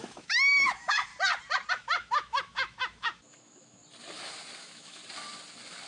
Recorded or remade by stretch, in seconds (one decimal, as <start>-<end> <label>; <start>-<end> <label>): 0.0-1.1 remade; 1.1-1.7 recorded; 1.7-3.8 remade; 3.8-4.6 recorded; 4.6-5.0 remade; 5.0-5.9 recorded

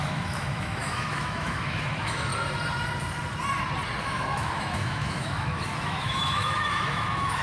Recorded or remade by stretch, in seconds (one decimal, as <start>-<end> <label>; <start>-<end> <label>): 0.0-2.3 remade; 2.3-4.0 recorded; 4.0-7.4 remade

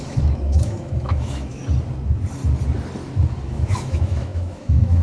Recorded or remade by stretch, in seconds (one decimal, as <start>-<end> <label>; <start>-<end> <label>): 0.0-1.6 remade; 1.6-3.5 recorded; 3.5-5.0 remade